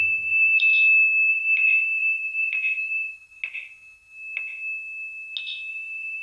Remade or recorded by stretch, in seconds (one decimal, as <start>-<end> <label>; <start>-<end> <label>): 0.0-0.7 remade; 0.7-1.3 recorded; 1.3-3.4 remade; 3.4-5.7 recorded; 5.7-6.2 remade

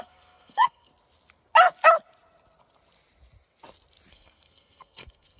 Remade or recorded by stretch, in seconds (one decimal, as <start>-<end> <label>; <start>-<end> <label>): 0.0-0.9 remade; 0.9-4.1 recorded; 4.1-5.4 remade

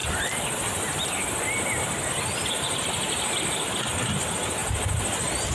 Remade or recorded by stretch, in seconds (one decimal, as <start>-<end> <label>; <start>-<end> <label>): 0.0-4.6 recorded; 4.6-5.5 remade

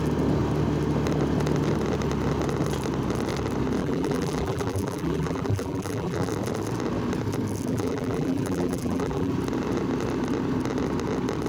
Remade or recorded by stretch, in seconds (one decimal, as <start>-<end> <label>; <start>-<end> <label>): 0.0-3.8 recorded; 3.8-6.3 remade; 6.3-7.7 recorded; 7.7-9.3 remade; 9.3-11.5 recorded

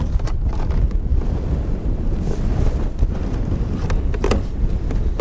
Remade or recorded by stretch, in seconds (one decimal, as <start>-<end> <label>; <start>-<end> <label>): 0.0-1.1 recorded; 1.1-3.8 remade; 3.8-5.2 recorded

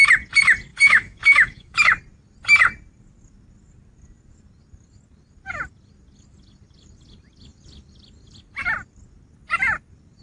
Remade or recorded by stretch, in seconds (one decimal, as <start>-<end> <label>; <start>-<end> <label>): 0.0-0.7 recorded; 0.7-1.8 remade; 1.8-10.2 recorded